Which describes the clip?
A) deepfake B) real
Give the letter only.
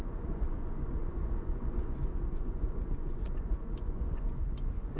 A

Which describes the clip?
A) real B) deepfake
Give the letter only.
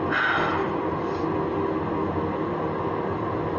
A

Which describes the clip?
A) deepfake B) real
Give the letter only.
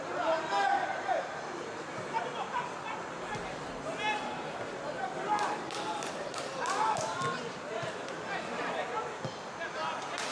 B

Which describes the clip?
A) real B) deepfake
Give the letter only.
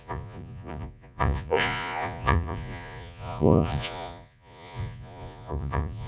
B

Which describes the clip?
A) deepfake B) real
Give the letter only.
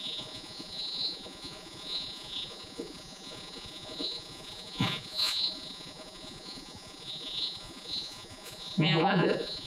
A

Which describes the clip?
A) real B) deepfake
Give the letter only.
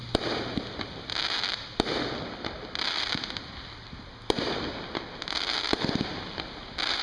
A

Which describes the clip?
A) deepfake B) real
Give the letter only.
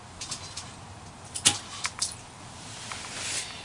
B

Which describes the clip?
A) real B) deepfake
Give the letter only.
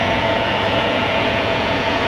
B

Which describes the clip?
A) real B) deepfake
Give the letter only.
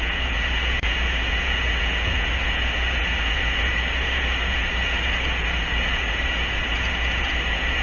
B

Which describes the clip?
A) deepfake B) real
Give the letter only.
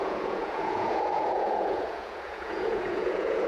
A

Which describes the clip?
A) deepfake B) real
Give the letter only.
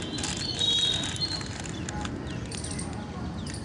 B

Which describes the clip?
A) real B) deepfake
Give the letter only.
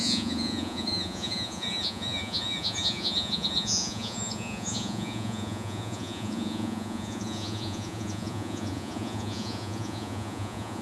B